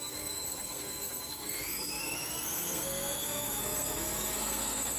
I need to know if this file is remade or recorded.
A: remade